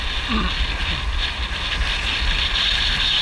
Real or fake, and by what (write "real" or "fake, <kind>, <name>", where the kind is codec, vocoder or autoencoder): real